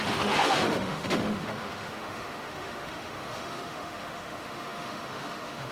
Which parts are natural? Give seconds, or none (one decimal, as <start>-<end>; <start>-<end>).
none